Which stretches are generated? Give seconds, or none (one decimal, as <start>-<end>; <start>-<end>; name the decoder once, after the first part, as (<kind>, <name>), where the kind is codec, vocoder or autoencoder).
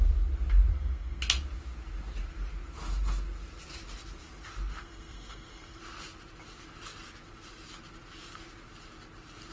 0.7-1.2 (codec, SNAC); 4.8-5.8